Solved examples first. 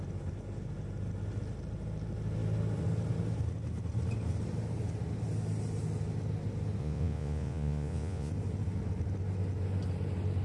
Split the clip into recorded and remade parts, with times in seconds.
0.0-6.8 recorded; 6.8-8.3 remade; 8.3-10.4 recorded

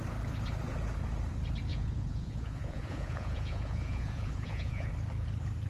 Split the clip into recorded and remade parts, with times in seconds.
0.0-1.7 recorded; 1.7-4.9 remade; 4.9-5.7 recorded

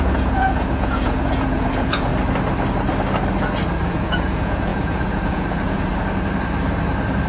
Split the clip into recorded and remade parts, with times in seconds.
0.0-2.1 remade; 2.1-3.8 recorded; 3.8-5.9 remade; 5.9-7.3 recorded

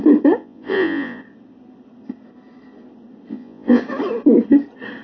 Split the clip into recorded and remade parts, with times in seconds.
0.0-0.4 recorded; 0.4-1.2 remade; 1.2-3.3 recorded; 3.3-3.8 remade; 3.8-5.0 recorded

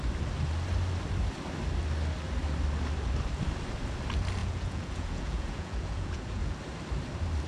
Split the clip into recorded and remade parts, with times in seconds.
0.0-4.4 recorded; 4.4-6.6 remade; 6.6-7.5 recorded

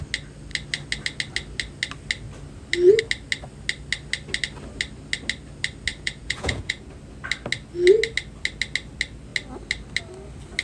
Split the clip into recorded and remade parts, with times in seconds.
0.0-5.9 recorded; 5.9-6.9 remade; 6.9-10.6 recorded

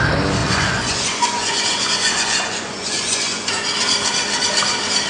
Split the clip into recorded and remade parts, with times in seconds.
0.0-0.4 recorded; 0.4-3.5 remade; 3.5-5.1 recorded

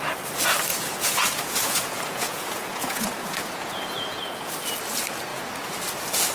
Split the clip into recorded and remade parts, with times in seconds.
0.0-0.7 recorded; 0.7-4.5 remade; 4.5-5.3 recorded; 5.3-5.8 remade; 5.8-6.3 recorded